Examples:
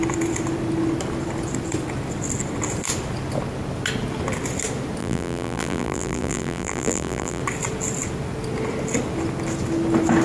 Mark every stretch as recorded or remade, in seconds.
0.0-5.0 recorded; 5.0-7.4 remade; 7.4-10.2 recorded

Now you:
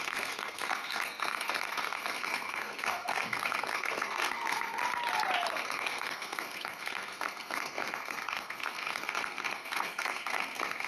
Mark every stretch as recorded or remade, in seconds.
0.0-4.8 remade; 4.8-5.5 recorded; 5.5-10.9 remade

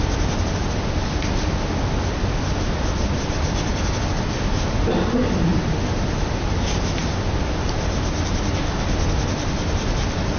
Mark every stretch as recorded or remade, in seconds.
0.0-10.4 recorded